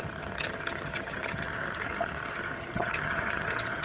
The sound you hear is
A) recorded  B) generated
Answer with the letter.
B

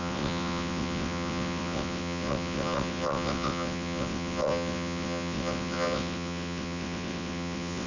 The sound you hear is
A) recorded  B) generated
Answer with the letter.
B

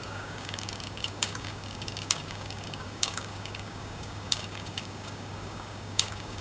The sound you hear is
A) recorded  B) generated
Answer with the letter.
B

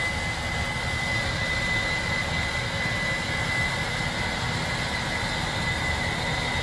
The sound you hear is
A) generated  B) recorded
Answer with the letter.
B